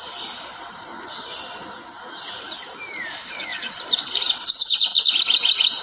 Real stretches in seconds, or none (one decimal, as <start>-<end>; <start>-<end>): 0.9-2.4; 4.9-5.8